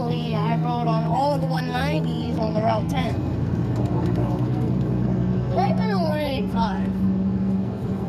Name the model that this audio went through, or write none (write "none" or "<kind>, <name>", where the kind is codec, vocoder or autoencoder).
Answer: codec, SNAC